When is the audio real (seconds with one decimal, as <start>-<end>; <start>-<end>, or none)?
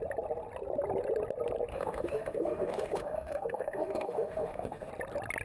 0.0-1.7; 4.9-5.4